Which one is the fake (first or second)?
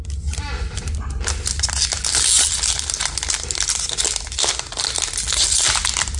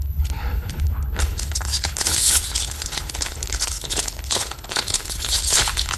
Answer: second